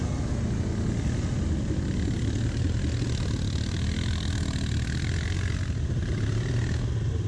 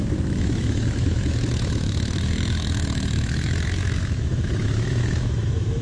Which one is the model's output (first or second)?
second